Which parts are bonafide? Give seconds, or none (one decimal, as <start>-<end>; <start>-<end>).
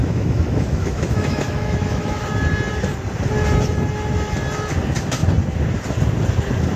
2.2-6.8